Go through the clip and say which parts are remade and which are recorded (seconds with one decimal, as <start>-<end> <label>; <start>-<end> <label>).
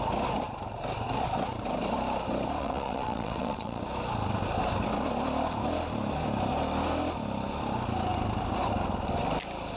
0.0-2.6 recorded; 2.6-3.8 remade; 3.8-9.8 recorded